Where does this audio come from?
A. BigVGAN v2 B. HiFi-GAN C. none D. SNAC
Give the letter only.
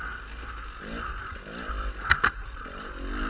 C